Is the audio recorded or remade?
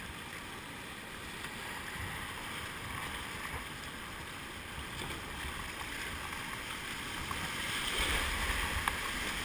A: recorded